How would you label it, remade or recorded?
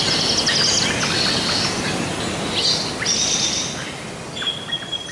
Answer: recorded